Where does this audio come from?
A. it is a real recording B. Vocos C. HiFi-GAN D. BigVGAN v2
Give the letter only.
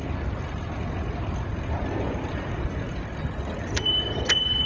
A